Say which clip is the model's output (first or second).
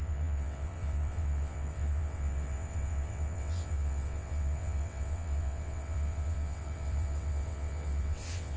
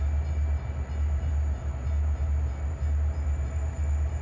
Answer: first